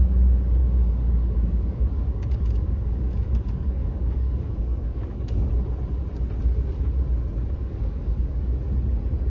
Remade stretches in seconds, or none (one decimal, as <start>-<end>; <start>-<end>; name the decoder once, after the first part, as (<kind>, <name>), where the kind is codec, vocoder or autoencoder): 0.6-5.5 (codec, DAC); 7.6-8.4

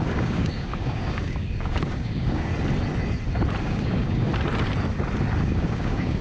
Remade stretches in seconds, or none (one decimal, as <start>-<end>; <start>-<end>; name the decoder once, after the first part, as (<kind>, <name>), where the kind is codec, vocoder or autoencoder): 0.0-2.5 (codec, DAC); 3.6-4.3; 5.4-6.2